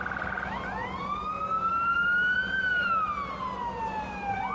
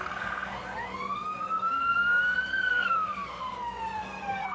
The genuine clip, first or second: first